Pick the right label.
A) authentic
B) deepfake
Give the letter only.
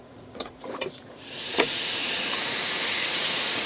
B